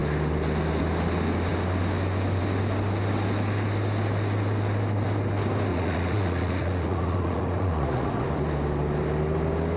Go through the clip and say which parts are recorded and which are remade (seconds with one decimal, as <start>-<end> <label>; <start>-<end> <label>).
0.0-5.7 recorded; 5.7-8.1 remade; 8.1-9.8 recorded